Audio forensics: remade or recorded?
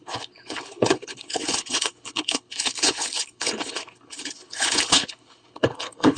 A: remade